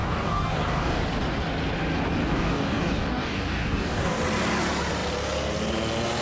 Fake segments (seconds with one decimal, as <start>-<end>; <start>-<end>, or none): 0.0-1.0; 2.2-4.2